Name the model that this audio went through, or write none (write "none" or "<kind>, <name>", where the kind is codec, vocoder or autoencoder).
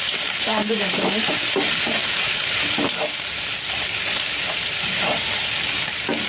vocoder, BigVGAN v2